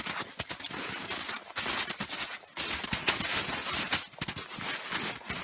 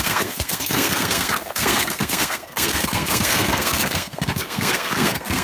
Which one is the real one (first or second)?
first